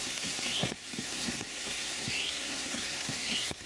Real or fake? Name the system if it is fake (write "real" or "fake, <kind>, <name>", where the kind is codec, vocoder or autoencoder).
fake, codec, SNAC